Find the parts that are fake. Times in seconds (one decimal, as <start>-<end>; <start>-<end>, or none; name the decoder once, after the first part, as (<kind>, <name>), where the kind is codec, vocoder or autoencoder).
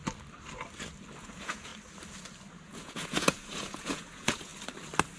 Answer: 1.2-1.7 (vocoder, Vocos); 2.6-4.5